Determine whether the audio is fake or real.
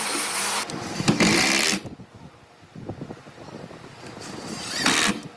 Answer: real